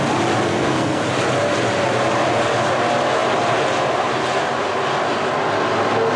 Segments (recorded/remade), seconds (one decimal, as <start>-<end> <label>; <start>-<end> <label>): 0.0-0.5 recorded; 0.5-1.0 remade; 1.0-6.2 recorded